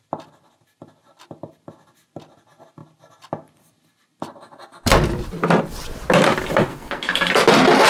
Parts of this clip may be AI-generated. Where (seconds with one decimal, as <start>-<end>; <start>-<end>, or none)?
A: 6.7-7.3

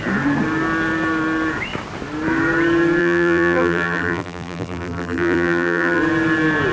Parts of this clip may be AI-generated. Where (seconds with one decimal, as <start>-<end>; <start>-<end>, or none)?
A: 3.0-6.0

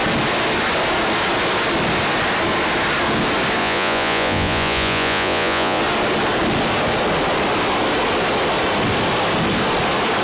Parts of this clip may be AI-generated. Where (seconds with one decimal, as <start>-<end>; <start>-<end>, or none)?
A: 3.6-5.8

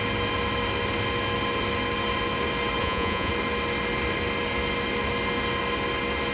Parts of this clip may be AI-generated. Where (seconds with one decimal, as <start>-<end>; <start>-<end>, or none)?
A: 2.8-3.3